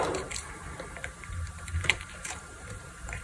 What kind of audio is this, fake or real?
fake